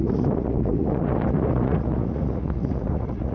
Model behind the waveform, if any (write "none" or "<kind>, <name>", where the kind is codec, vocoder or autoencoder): vocoder, Vocos